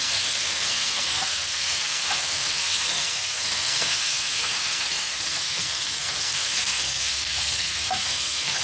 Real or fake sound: fake